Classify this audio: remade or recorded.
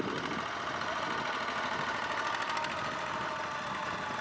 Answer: recorded